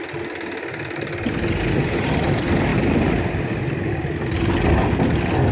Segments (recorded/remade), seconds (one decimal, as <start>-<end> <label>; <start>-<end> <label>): 0.0-2.7 recorded; 2.7-3.7 remade; 3.7-5.5 recorded

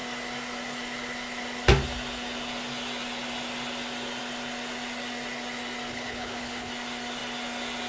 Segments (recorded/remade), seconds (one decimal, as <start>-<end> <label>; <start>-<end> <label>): 0.0-5.9 recorded; 5.9-6.7 remade; 6.7-7.9 recorded